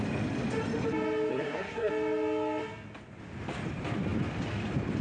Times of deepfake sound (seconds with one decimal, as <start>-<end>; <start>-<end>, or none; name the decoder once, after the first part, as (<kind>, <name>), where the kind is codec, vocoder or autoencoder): 1.3-1.9 (codec, SNAC)